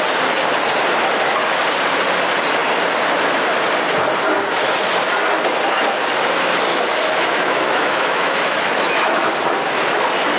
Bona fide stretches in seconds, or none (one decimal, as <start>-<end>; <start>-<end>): 0.0-6.7; 9.3-10.4